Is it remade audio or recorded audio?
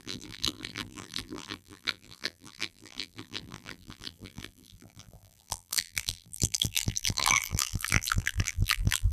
remade